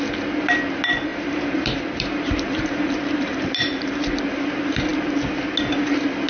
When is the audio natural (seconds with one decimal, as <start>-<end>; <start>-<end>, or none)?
0.0-1.1; 4.2-6.3